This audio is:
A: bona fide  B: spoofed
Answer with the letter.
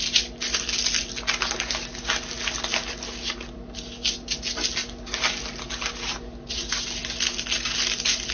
A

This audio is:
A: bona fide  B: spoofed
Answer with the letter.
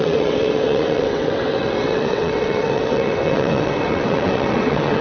B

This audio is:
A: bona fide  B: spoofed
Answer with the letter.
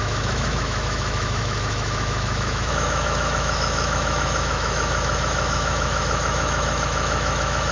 B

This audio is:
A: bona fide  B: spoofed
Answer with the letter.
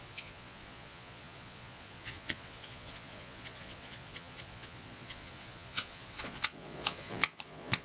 B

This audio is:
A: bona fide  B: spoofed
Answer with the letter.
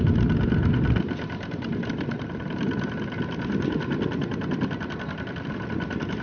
A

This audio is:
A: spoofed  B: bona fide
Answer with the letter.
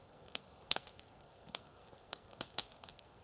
A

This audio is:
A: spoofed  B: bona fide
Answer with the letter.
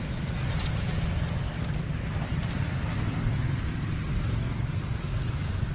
B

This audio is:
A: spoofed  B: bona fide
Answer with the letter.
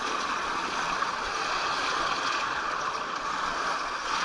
A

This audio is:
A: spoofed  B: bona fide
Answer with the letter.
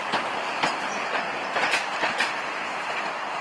B